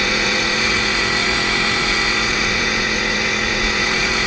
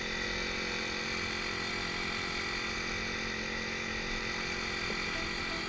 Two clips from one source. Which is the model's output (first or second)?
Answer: first